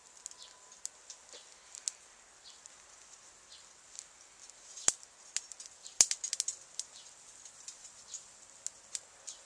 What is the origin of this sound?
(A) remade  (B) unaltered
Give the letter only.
B